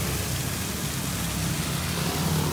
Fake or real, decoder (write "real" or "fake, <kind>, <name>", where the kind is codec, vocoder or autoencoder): real